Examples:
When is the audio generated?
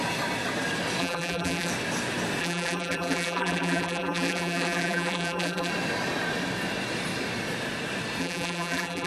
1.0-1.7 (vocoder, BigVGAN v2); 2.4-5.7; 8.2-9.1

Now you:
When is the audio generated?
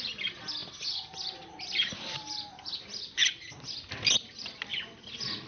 none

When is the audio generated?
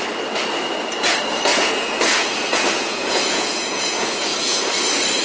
1.5-4.6 (vocoder, Vocos)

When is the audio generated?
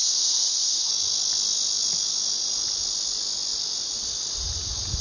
0.0-0.9 (codec, ZipCodec)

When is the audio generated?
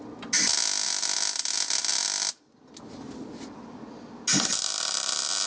none